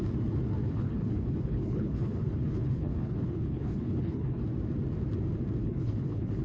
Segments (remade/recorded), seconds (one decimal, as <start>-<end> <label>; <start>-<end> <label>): 0.0-0.6 recorded; 0.6-4.4 remade; 4.4-5.6 recorded; 5.6-6.4 remade